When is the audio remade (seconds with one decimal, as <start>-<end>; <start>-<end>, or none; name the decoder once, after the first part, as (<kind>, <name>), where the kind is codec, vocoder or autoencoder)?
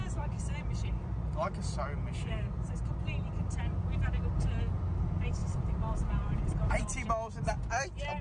5.4-6.8 (vocoder, BigVGAN v2)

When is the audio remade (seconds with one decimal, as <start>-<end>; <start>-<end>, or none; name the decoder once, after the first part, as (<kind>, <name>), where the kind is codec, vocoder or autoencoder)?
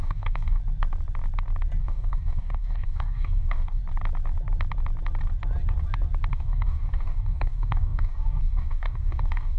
0.0-0.6 (codec, DAC); 1.8-3.8; 6.3-9.6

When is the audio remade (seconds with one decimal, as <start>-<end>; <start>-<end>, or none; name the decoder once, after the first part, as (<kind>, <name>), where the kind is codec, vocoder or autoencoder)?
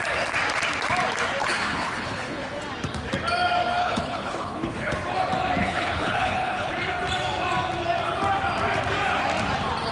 1.4-2.6 (codec, HILCodec); 3.8-4.9; 5.6-6.7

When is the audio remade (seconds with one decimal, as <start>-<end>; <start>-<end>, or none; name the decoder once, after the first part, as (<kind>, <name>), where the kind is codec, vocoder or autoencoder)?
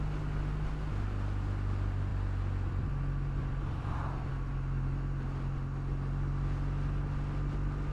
3.4-4.3 (vocoder, BigVGAN v2)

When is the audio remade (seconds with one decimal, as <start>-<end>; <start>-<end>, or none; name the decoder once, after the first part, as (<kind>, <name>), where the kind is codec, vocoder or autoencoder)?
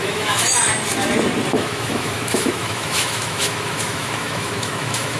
0.0-0.7 (autoencoder, DAC-VAE); 1.5-5.2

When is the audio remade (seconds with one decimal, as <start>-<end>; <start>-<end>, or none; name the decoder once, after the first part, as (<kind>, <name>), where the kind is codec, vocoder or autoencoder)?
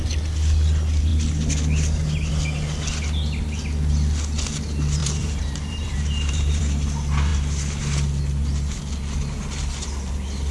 5.0-6.6 (vocoder, BigVGAN v2)